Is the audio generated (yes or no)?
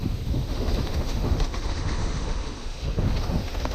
yes